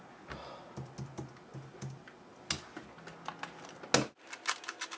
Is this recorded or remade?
recorded